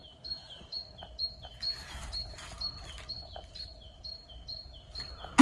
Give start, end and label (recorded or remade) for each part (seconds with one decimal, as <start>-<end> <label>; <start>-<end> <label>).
0.0-5.4 recorded